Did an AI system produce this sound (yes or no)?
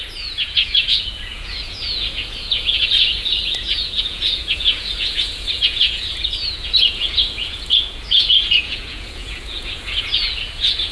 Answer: yes